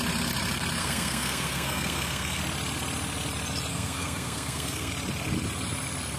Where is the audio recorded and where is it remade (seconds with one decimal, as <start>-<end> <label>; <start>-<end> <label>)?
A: 0.0-0.8 recorded; 0.8-2.4 remade; 2.4-3.7 recorded; 3.7-4.9 remade; 4.9-6.2 recorded